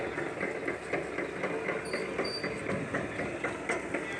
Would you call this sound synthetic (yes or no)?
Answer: no